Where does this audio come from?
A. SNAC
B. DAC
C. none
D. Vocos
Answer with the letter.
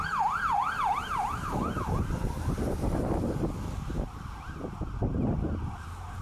C